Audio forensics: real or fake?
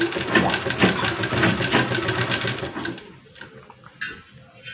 real